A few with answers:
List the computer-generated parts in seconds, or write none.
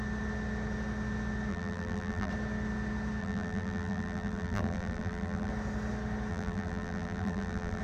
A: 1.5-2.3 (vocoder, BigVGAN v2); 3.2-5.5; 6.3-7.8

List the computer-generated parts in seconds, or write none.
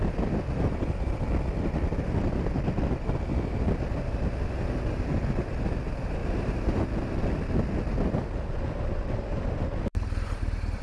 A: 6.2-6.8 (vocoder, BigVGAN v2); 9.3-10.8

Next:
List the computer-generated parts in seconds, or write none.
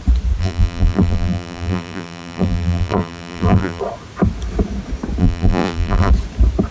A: 0.4-3.8 (vocoder, BigVGAN v2); 5.2-6.1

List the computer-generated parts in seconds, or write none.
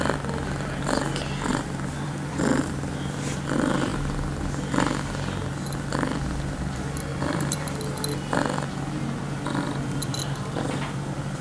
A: 1.5-2.4 (vocoder, BigVGAN v2); 7.1-7.8